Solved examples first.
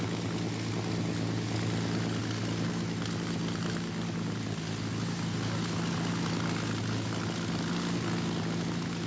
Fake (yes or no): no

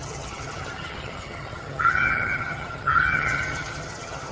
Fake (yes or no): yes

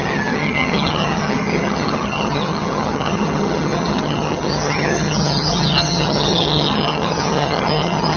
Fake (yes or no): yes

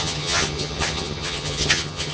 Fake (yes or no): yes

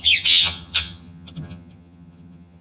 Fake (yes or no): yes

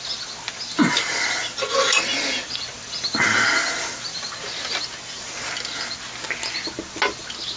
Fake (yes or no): no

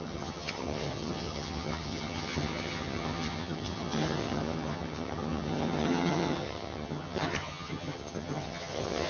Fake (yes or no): yes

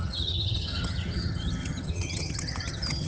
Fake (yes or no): yes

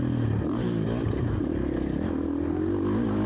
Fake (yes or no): no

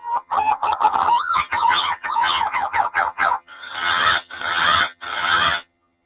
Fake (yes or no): yes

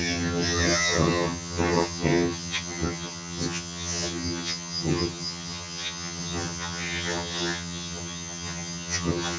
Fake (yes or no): yes